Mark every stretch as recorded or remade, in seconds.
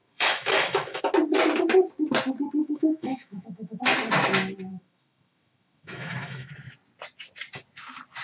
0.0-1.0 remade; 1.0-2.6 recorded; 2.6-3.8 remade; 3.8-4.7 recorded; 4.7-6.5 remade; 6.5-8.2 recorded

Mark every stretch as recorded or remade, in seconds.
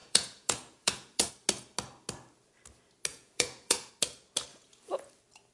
0.0-1.3 remade; 1.3-3.1 recorded; 3.1-3.9 remade; 3.9-4.5 recorded; 4.5-5.1 remade; 5.1-5.5 recorded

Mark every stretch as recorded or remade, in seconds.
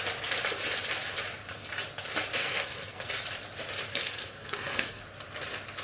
0.0-2.4 recorded; 2.4-3.1 remade; 3.1-3.9 recorded; 3.9-5.0 remade; 5.0-5.8 recorded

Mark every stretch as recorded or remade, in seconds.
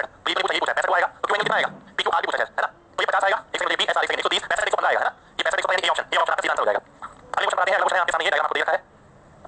0.0-6.2 recorded; 6.2-7.2 remade; 7.2-9.5 recorded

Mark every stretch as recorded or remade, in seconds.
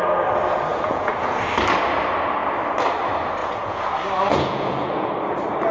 0.0-0.7 recorded; 0.7-1.4 remade; 1.4-3.4 recorded; 3.4-3.9 remade; 3.9-4.3 recorded; 4.3-5.1 remade; 5.1-5.7 recorded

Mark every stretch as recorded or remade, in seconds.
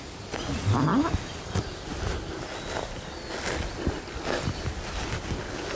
0.0-5.8 recorded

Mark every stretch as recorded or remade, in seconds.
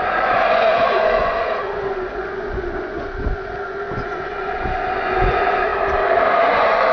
0.0-5.7 remade; 5.7-6.5 recorded; 6.5-6.9 remade